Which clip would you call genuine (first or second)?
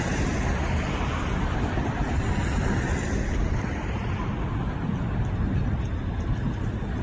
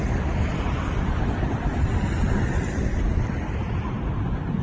first